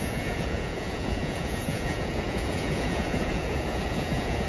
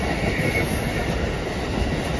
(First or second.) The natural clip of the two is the second